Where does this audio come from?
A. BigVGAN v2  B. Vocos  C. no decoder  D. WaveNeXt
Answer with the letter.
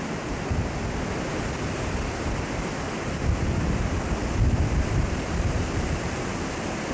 C